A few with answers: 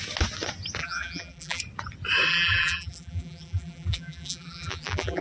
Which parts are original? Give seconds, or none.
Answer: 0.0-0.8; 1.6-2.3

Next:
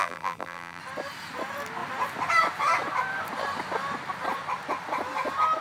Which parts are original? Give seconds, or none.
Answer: 0.8-5.6

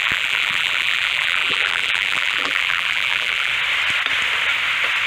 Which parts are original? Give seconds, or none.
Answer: 3.5-5.1

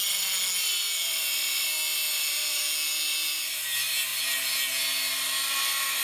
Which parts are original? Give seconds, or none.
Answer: 0.0-6.0

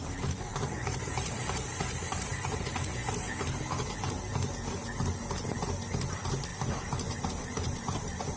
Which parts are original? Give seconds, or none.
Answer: 2.3-6.1

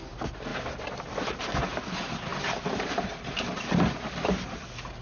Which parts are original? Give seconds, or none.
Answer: 0.0-0.5; 1.3-2.3; 3.7-5.0

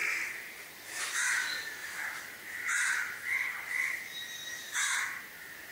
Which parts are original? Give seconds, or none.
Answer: 1.0-1.8; 5.2-5.7

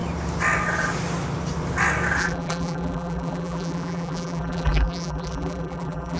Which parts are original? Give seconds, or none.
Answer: 0.0-2.2